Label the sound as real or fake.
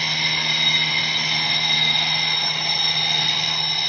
real